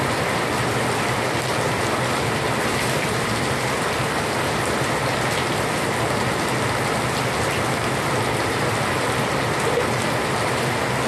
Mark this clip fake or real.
real